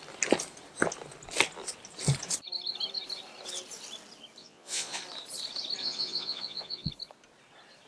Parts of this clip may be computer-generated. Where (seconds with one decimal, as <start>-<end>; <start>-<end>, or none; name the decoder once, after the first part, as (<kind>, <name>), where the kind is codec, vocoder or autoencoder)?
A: 4.4-5.0 (vocoder, Vocos); 5.8-6.9